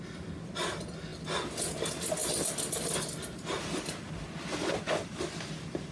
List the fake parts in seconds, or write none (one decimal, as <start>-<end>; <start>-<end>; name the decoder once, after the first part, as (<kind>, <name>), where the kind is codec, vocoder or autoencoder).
none